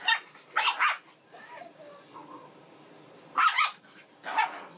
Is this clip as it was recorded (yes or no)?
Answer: yes